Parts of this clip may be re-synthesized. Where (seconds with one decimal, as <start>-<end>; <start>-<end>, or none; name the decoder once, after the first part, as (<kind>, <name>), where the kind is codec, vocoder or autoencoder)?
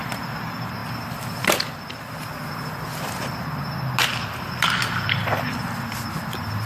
none